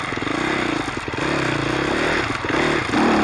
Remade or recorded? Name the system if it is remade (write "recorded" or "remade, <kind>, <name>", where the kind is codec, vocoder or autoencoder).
recorded